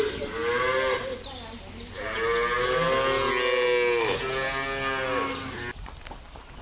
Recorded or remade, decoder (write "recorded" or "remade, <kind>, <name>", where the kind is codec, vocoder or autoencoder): recorded